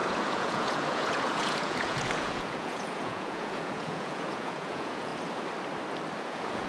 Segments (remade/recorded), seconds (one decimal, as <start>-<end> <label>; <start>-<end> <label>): 0.0-5.1 remade; 5.1-6.2 recorded; 6.2-6.7 remade